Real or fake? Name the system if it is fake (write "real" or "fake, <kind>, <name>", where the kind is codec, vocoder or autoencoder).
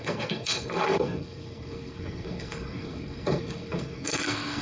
fake, codec, SNAC